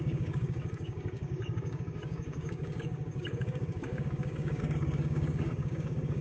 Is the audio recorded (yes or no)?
no